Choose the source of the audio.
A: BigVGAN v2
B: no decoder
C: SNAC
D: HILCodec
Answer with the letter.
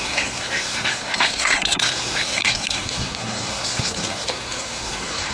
C